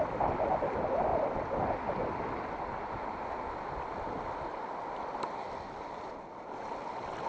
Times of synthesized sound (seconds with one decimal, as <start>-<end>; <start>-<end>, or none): none